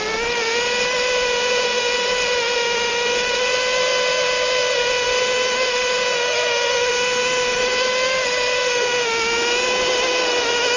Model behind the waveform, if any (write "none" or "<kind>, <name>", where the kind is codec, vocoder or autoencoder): none